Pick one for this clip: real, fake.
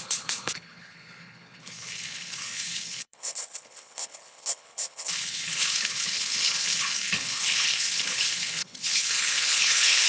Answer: fake